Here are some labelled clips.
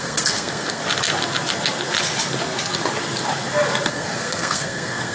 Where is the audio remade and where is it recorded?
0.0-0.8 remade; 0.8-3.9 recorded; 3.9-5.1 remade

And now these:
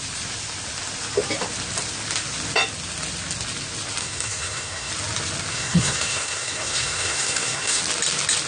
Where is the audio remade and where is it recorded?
0.0-4.0 recorded; 4.0-4.9 remade; 4.9-5.5 recorded; 5.5-7.8 remade; 7.8-8.5 recorded